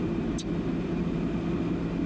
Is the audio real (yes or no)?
yes